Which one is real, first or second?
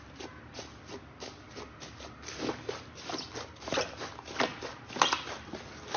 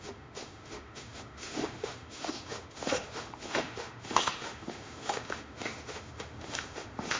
first